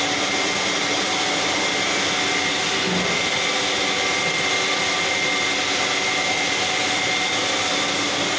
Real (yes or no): yes